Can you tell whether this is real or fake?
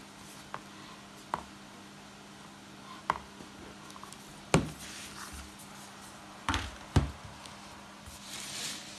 real